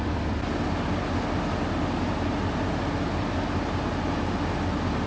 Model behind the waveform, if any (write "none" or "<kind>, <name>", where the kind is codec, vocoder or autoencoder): none